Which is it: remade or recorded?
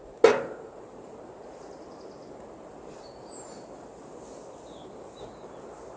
recorded